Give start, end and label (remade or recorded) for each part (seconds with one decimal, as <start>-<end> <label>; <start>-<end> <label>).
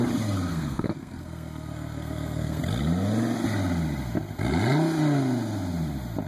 0.0-0.5 recorded; 0.5-2.6 remade; 2.6-6.3 recorded